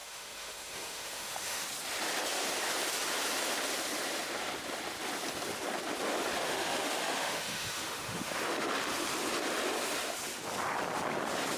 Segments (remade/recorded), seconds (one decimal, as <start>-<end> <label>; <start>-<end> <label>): 0.0-1.6 remade; 1.6-6.4 recorded; 6.4-8.7 remade; 8.7-11.6 recorded